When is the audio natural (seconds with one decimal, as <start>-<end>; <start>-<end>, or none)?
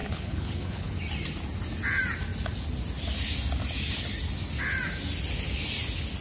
0.9-6.2